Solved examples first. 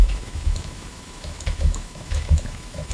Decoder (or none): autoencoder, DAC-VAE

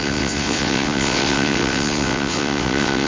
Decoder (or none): vocoder, WaveNeXt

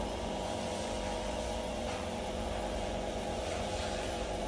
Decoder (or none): vocoder, Vocos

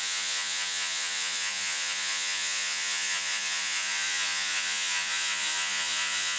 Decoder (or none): vocoder, Vocos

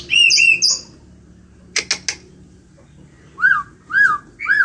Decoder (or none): none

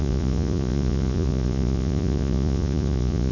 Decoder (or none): vocoder, Vocos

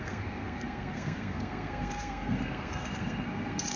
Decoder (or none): codec, SNAC